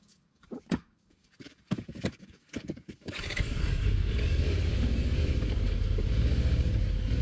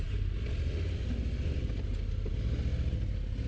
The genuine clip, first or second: second